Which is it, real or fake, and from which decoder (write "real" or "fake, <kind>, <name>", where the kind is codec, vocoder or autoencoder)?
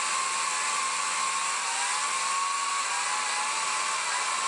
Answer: real